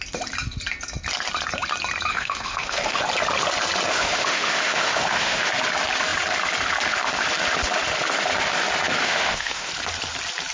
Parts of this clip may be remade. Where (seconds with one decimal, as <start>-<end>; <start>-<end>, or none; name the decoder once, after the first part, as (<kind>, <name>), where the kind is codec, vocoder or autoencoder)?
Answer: 2.1-3.0 (autoencoder, DAC-VAE); 3.9-5.5; 9.0-9.7